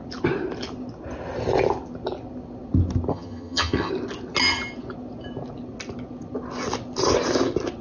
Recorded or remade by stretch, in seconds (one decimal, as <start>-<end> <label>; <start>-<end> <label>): 0.0-3.1 recorded; 3.1-3.9 remade; 3.9-7.8 recorded